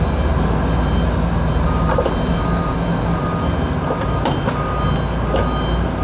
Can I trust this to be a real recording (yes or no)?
yes